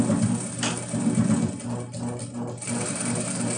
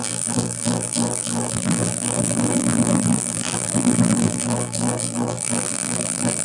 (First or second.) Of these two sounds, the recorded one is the first